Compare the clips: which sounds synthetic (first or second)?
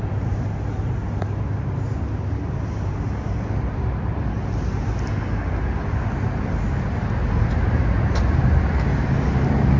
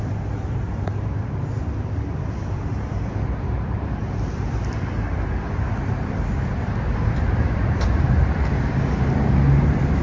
second